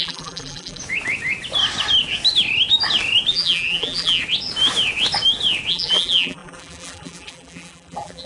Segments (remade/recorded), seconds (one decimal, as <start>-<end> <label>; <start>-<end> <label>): 0.0-0.8 remade; 0.8-3.3 recorded; 3.3-4.2 remade; 4.2-5.7 recorded; 5.7-8.3 remade

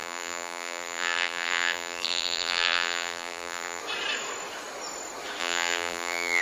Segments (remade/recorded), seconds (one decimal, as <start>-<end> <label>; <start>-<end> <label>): 0.0-3.8 remade; 3.8-5.4 recorded; 5.4-6.4 remade